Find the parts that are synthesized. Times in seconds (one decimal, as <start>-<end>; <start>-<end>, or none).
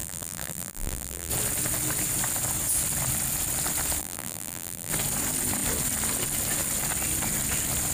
0.0-1.3; 4.0-4.9